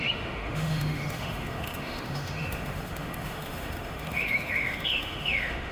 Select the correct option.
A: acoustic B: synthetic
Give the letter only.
B